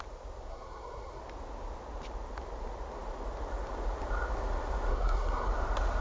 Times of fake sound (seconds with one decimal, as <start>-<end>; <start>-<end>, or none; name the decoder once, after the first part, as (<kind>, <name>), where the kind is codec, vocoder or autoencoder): 0.5-1.2 (codec, SNAC); 4.9-5.5